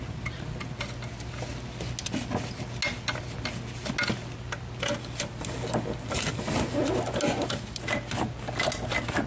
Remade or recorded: recorded